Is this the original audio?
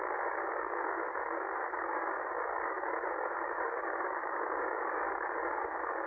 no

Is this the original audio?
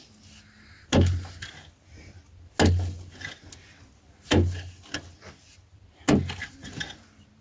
yes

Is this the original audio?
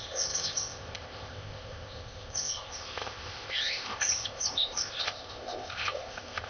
no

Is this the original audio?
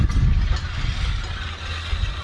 yes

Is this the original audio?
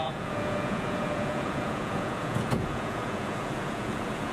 no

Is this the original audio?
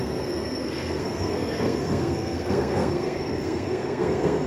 no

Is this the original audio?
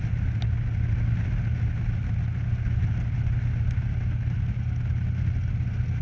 yes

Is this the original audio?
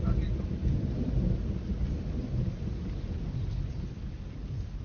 yes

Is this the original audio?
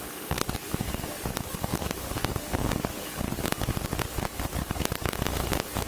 no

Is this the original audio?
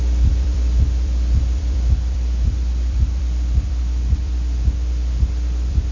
no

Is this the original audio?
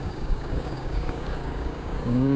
no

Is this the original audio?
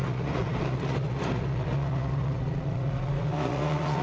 no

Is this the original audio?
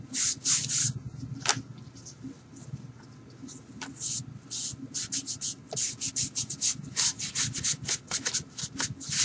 yes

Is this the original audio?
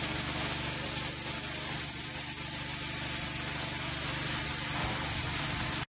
yes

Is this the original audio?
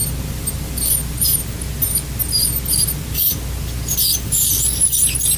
yes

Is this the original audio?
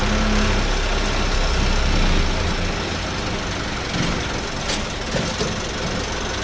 yes